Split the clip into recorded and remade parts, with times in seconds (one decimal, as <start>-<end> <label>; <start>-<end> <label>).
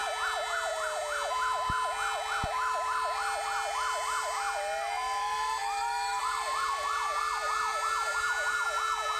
0.0-5.6 recorded; 5.6-6.2 remade; 6.2-9.2 recorded